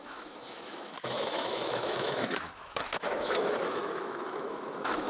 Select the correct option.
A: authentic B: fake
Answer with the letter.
B